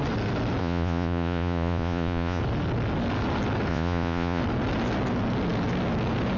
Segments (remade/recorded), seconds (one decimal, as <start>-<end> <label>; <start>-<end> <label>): 0.0-0.6 recorded; 0.6-2.4 remade; 2.4-3.7 recorded; 3.7-4.4 remade; 4.4-6.4 recorded